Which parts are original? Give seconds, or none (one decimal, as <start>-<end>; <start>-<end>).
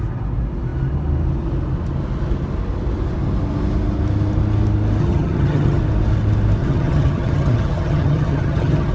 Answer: 0.0-5.0; 5.8-6.6